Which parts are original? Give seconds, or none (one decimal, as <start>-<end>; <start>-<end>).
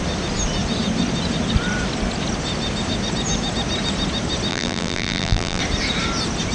0.0-4.5; 5.6-6.5